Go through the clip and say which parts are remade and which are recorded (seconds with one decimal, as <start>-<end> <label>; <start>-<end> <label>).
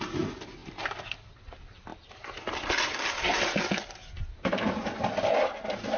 0.0-6.0 recorded